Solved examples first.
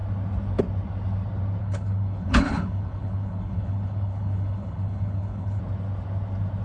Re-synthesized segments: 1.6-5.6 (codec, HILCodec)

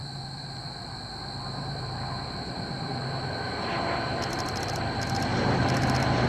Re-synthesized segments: 0.0-0.6 (vocoder, BigVGAN v2); 1.6-4.3; 5.3-6.3

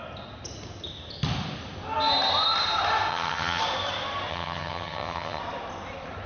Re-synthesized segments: 3.1-3.6 (vocoder, HiFi-GAN); 4.3-5.4